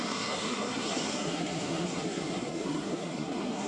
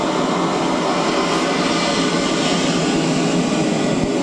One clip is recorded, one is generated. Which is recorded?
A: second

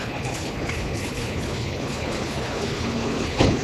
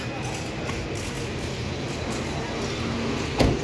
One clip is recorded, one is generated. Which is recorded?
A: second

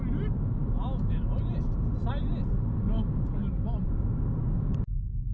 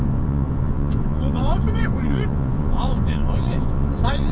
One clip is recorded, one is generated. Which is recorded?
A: first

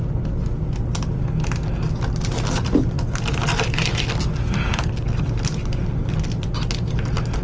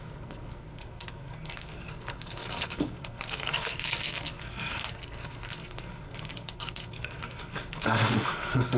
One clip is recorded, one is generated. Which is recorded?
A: first